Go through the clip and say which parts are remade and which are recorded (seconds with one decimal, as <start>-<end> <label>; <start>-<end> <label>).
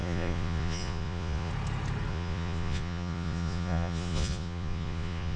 0.0-1.5 remade; 1.5-2.1 recorded; 2.1-5.4 remade